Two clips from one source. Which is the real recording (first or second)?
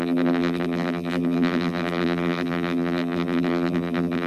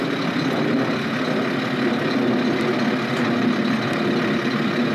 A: second